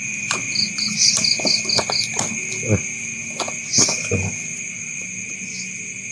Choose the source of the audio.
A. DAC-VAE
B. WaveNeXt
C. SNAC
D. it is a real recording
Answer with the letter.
D